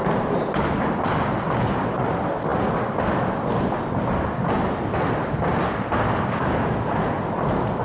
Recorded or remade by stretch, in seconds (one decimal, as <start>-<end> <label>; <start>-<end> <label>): 0.0-7.8 recorded